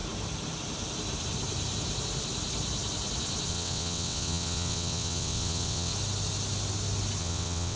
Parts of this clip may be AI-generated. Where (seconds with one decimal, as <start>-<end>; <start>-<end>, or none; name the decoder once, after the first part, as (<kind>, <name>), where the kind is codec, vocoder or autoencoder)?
3.5-5.9 (vocoder, WaveNeXt); 7.2-7.8